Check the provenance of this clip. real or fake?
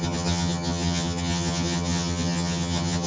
fake